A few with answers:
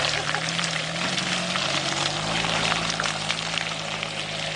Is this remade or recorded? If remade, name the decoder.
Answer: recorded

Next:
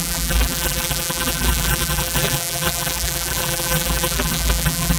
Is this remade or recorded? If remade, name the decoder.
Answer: remade, vocoder, BigVGAN v2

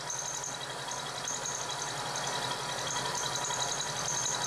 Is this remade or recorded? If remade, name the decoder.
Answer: recorded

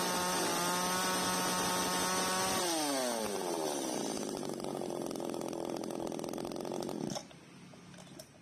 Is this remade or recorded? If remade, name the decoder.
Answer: recorded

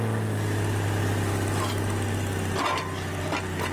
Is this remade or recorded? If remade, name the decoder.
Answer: recorded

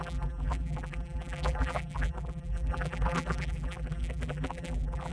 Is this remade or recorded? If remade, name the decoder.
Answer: remade, vocoder, BigVGAN v2